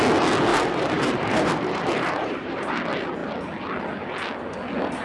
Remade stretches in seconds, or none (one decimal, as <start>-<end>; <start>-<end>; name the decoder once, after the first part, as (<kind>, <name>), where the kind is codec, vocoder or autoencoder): 0.5-2.7 (vocoder, BigVGAN v2)